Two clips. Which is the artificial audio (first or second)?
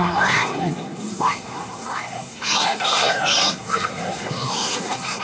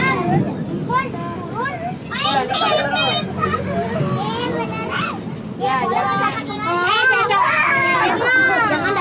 first